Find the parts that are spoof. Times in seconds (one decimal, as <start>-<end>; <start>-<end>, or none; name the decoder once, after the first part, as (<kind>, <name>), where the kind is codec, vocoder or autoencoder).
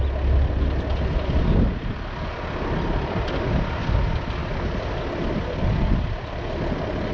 none